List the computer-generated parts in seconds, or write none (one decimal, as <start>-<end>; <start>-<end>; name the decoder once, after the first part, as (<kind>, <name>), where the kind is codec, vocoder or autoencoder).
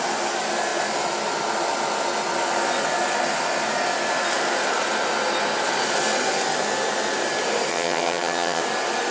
7.7-8.6 (vocoder, HiFi-GAN)